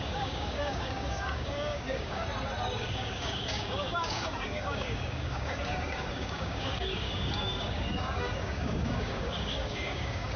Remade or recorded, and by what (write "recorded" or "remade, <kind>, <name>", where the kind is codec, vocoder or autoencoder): remade, codec, DAC